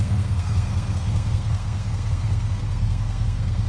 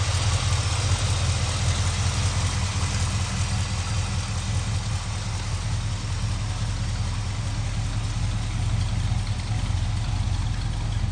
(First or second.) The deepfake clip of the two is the first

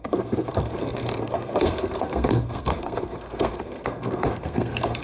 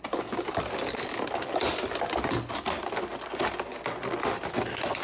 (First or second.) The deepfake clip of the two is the first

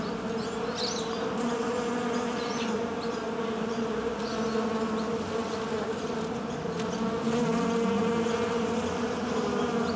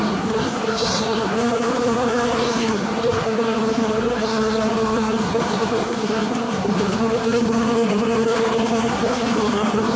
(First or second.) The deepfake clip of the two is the second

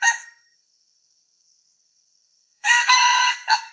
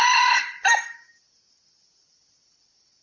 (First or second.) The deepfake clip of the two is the first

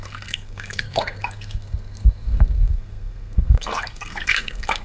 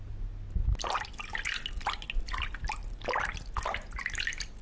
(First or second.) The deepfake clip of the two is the first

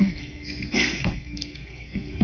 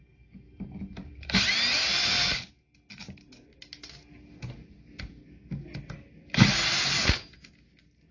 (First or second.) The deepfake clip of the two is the first